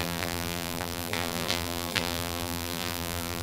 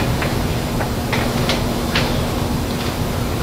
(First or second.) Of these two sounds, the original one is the second